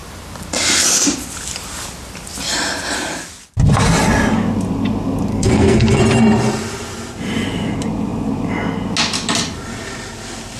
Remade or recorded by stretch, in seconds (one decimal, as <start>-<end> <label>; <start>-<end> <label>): 0.0-5.3 recorded; 5.3-6.0 remade; 6.0-10.6 recorded